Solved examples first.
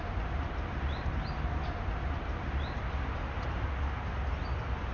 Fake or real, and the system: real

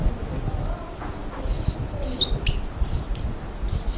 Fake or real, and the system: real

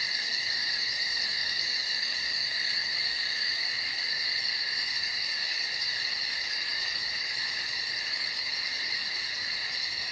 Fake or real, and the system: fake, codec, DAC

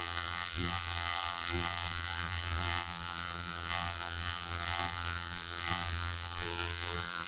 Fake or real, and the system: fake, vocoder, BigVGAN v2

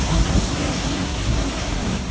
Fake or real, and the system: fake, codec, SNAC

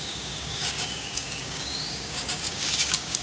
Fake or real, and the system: fake, codec, DAC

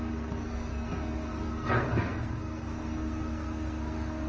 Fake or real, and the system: fake, codec, SNAC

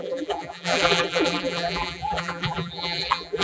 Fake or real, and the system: fake, vocoder, BigVGAN v2